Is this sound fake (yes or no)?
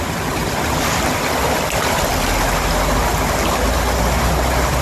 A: no